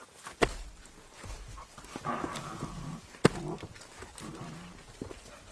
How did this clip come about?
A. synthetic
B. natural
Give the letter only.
B